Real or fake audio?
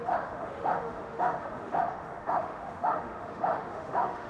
fake